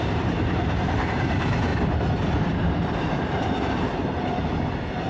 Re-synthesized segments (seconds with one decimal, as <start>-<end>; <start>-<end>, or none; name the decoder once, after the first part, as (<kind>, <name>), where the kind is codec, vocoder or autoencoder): 0.0-1.7 (vocoder, BigVGAN v2)